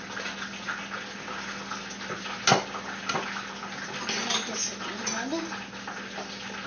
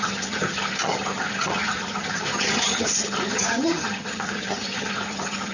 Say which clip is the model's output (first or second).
second